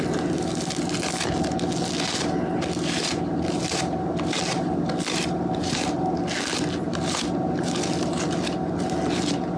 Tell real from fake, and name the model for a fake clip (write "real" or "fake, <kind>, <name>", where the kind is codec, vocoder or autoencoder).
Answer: real